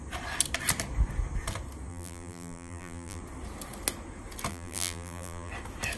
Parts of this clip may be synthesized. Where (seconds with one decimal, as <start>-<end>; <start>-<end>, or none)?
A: 1.9-3.2; 4.5-5.5